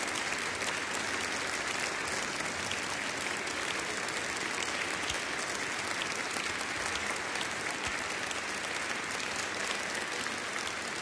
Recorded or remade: recorded